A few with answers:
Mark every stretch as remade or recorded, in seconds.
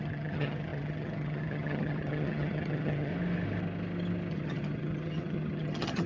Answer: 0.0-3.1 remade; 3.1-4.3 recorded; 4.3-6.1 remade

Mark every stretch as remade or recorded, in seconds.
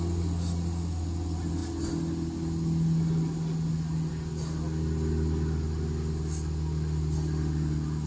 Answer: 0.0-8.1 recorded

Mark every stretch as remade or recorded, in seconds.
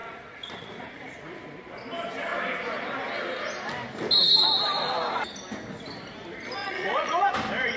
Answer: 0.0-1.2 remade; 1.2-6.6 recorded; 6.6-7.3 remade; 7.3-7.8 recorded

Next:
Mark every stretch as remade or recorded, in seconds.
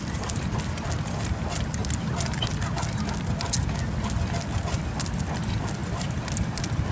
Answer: 0.0-6.9 recorded